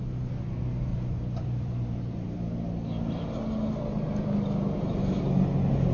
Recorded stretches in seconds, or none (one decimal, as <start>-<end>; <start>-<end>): 0.0-0.9; 3.3-5.9

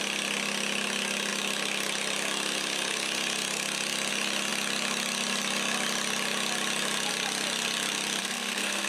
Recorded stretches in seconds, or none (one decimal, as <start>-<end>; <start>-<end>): 0.0-8.2

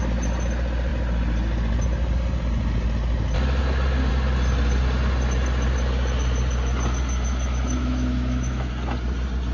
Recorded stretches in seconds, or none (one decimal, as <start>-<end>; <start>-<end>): 0.0-7.8; 8.7-9.5

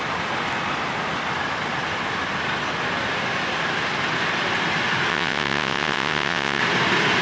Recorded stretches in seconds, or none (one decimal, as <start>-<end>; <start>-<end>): 0.0-5.1; 6.6-7.2

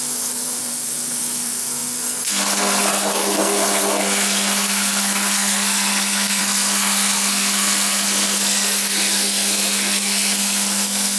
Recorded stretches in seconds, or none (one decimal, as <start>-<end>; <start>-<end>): none